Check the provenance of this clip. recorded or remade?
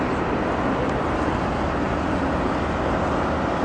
recorded